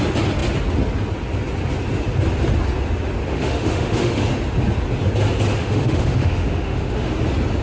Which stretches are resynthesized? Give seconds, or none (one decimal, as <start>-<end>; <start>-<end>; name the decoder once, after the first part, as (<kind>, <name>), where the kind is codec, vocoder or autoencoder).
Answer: 3.3-4.2 (autoencoder, DAC-VAE); 5.6-7.1